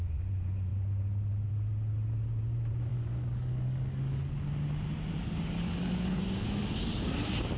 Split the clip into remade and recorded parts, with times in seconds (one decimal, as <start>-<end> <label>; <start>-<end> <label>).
0.0-2.9 recorded; 2.9-4.2 remade; 4.2-5.2 recorded; 5.2-6.2 remade; 6.2-7.6 recorded